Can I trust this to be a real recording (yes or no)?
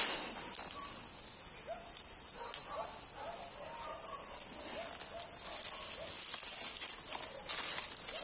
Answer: yes